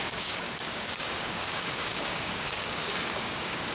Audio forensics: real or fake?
fake